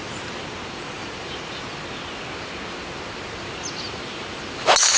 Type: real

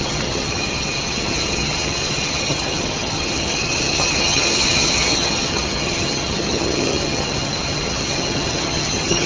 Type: fake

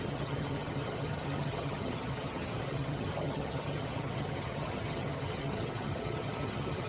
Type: fake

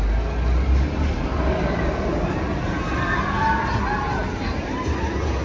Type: real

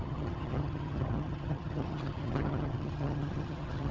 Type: fake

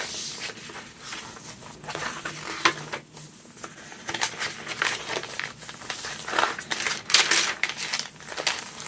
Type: real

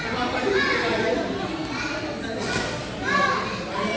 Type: real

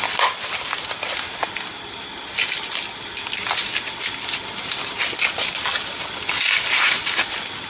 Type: real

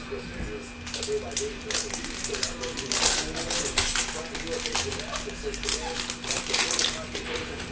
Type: real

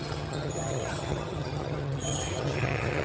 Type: fake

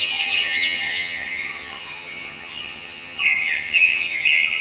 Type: fake